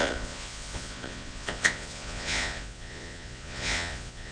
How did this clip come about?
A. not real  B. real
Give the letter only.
A